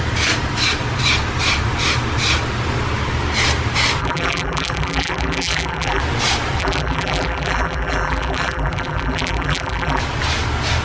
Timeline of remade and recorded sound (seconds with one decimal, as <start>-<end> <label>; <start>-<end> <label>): 0.0-4.0 recorded; 4.0-6.0 remade; 6.0-6.6 recorded; 6.6-10.0 remade; 10.0-10.8 recorded